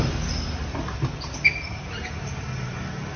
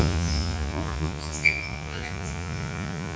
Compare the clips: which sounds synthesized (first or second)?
second